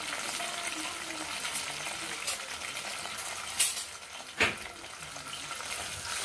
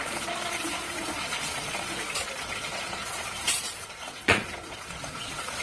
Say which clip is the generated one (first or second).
second